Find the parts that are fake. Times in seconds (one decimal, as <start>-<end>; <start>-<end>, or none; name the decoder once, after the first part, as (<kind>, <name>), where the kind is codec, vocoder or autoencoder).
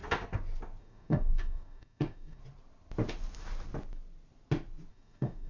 0.8-2.4 (codec, DAC); 4.9-5.5